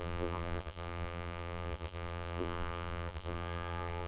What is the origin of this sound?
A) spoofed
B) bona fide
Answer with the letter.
A